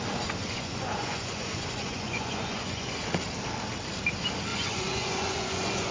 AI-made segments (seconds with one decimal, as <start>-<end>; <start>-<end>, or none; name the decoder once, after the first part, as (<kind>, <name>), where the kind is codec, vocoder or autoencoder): 0.4-3.0 (vocoder, Vocos); 4.5-5.9